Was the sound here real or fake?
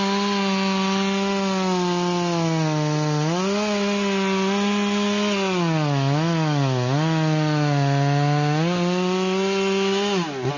real